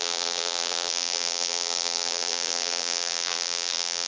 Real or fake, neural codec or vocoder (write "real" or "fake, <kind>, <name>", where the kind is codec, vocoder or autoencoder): fake, vocoder, BigVGAN v2